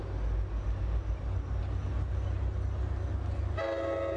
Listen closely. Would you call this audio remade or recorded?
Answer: recorded